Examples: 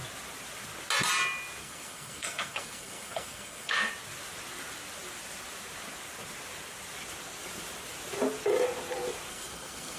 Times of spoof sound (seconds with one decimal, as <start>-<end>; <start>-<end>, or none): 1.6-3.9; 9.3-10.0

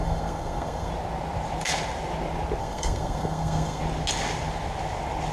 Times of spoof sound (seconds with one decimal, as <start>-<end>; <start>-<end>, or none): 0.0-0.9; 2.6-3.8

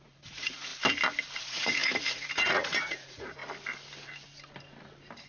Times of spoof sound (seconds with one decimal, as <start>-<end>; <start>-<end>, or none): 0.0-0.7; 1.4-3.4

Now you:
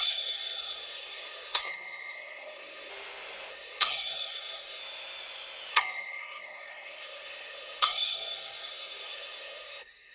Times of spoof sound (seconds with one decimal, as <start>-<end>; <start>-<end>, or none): 0.0-2.9; 3.5-4.8; 5.7-10.1